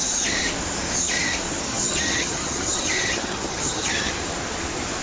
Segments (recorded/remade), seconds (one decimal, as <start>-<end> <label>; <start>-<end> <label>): 0.0-1.7 recorded; 1.7-4.1 remade; 4.1-5.0 recorded